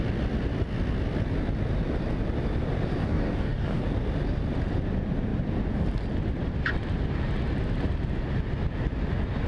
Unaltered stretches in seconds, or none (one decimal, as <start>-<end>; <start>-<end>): 0.0-3.0; 3.8-9.5